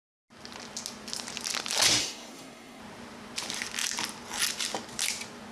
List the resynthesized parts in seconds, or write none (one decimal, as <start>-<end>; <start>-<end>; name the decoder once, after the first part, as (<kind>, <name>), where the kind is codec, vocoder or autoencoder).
2.0-2.8 (codec, SNAC)